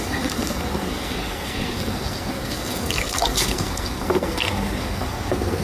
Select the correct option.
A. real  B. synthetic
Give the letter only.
B